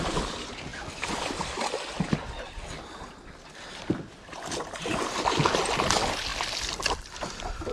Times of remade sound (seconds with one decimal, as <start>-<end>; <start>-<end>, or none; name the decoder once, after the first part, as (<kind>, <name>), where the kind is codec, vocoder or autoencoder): none